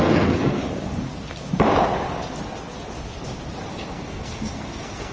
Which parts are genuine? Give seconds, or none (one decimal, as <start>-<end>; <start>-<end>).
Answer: 0.6-3.7